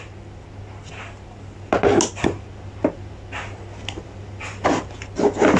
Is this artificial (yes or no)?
no